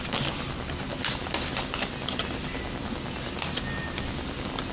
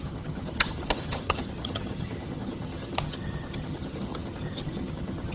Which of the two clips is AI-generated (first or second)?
second